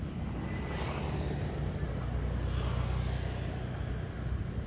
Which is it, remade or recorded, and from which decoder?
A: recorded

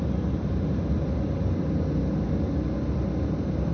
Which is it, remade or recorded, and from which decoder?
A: recorded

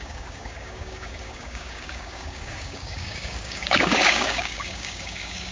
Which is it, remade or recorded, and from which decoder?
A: remade, codec, DAC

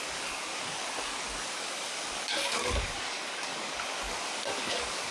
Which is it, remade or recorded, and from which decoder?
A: remade, codec, DAC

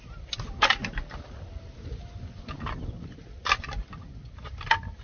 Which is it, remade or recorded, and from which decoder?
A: recorded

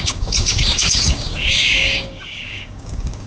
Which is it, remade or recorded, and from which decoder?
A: remade, codec, DAC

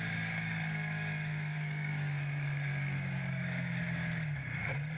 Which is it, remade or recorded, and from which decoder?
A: remade, codec, DAC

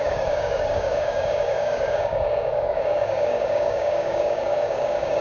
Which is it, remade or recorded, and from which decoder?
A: remade, codec, DAC